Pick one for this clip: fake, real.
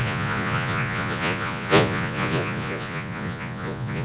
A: fake